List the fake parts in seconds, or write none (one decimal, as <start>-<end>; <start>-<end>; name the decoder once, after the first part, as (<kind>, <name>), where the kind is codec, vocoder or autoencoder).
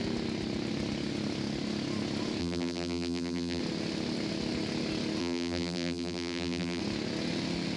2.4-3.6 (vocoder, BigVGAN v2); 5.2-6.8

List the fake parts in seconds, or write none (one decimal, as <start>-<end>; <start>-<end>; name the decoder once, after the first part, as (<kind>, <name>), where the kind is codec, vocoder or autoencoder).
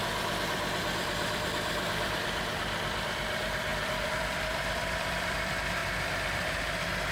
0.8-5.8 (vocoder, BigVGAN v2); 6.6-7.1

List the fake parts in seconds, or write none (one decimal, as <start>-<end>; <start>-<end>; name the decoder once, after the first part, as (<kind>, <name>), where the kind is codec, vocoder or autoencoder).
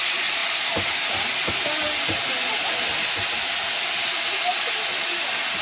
none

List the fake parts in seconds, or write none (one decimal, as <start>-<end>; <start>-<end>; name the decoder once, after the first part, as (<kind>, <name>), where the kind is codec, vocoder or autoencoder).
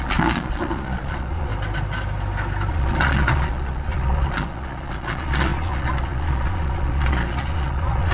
0.0-1.5 (vocoder, Vocos); 2.7-8.1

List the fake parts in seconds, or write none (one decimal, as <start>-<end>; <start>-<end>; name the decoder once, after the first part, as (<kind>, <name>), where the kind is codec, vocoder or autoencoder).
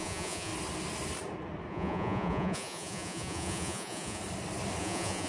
0.0-0.5 (vocoder, Vocos); 1.7-4.2; 4.8-5.3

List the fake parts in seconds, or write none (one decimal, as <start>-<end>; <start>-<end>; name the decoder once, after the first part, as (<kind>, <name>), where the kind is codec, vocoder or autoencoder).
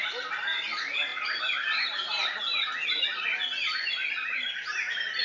1.1-2.4 (vocoder, BigVGAN v2)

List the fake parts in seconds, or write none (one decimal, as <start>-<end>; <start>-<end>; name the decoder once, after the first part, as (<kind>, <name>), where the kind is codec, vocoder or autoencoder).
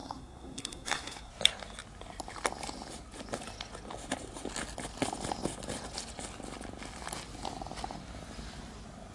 0.0-1.3 (codec, SNAC)